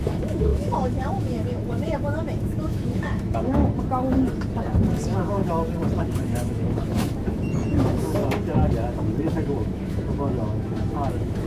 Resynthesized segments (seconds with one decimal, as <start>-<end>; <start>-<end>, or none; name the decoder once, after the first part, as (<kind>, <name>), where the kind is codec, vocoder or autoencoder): 0.0-3.6 (autoencoder, DAC-VAE); 4.5-5.4; 6.0-8.2; 9.6-11.5

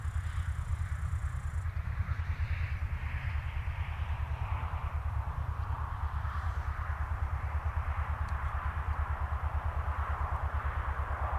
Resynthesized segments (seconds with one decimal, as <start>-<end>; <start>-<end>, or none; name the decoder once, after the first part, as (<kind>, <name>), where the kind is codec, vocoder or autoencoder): none

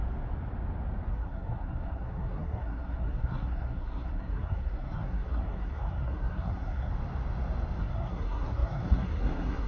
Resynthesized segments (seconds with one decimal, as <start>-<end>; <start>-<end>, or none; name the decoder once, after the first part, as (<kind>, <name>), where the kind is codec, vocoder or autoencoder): 1.1-6.9 (codec, SNAC); 7.8-9.7

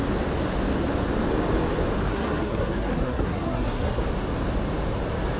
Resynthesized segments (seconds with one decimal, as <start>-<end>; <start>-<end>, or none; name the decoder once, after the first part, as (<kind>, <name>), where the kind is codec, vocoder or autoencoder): 2.1-4.0 (codec, SNAC)

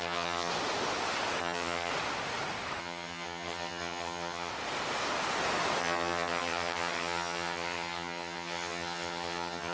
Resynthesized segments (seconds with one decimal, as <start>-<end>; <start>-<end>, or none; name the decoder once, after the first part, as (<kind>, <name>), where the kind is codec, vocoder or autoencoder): 0.0-0.5 (vocoder, HiFi-GAN); 1.4-1.9; 2.8-4.5; 5.8-9.7